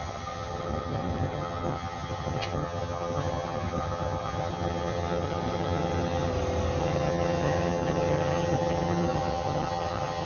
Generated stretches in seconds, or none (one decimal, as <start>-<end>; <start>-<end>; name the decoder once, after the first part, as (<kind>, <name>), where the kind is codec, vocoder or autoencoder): 0.0-6.3 (vocoder, HiFi-GAN); 6.8-10.3

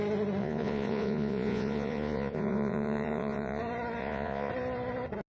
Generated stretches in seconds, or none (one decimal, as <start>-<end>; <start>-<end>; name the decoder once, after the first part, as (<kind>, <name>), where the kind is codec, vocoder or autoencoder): 0.4-3.6 (vocoder, Vocos); 4.0-4.5

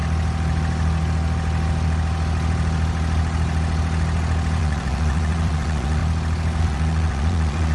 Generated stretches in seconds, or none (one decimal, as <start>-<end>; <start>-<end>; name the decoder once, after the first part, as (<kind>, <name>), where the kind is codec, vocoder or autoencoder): 4.6-6.0 (vocoder, Vocos); 6.6-7.7

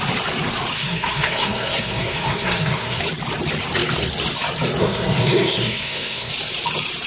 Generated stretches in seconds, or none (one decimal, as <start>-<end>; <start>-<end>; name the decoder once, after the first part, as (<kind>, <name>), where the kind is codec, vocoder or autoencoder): 0.8-3.0 (codec, SNAC); 4.8-6.3